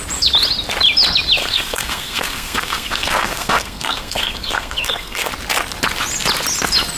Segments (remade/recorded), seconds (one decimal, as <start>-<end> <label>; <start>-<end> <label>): 0.0-1.4 recorded; 1.4-5.3 remade; 5.3-7.0 recorded